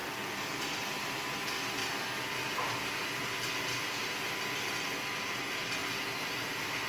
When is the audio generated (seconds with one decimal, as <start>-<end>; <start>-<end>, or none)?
0.0-1.3; 1.8-3.2